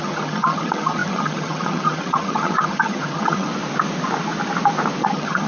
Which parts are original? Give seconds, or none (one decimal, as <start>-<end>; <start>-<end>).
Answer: 3.5-5.0